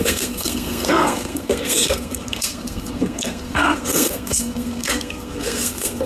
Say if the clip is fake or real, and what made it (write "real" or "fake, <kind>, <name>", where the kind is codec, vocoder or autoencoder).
fake, codec, SNAC